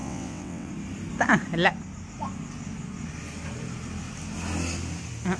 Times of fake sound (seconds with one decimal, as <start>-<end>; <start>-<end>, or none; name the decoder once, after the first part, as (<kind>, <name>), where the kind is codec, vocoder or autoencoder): 0.0-0.7 (vocoder, WaveNeXt)